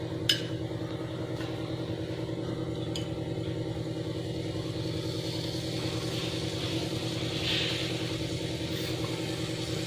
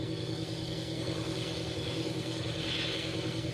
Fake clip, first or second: second